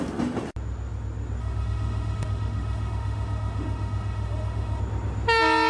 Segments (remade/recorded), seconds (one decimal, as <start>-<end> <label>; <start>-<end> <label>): 0.0-1.4 recorded; 1.4-4.8 remade; 4.8-5.7 recorded